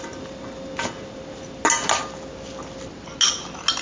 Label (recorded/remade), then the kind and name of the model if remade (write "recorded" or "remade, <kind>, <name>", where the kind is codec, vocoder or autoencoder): recorded